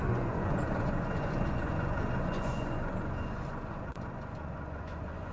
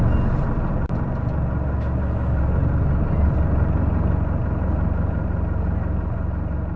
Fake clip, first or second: first